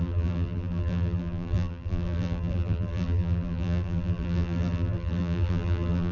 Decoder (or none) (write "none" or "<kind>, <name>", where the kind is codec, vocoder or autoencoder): vocoder, BigVGAN v2